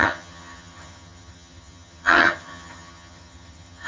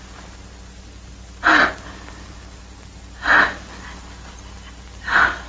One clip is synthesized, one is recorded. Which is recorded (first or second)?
second